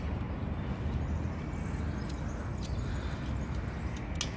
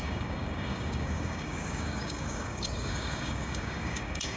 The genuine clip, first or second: first